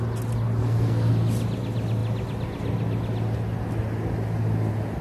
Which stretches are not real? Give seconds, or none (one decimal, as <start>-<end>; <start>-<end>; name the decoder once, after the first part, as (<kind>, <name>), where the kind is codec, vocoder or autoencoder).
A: 0.6-1.1 (codec, SNAC)